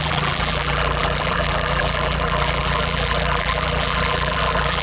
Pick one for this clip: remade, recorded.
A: remade